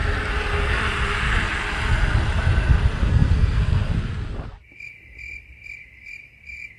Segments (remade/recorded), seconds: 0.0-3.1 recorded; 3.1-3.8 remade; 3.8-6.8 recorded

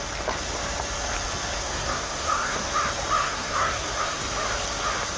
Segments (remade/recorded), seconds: 0.0-1.6 recorded; 1.6-2.7 remade; 2.7-3.2 recorded; 3.2-4.2 remade; 4.2-5.2 recorded